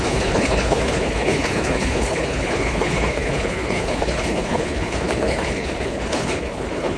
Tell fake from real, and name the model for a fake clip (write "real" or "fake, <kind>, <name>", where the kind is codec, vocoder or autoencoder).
fake, codec, HILCodec